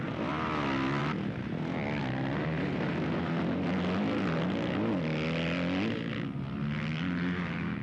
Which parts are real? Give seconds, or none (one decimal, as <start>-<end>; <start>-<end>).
0.0-7.8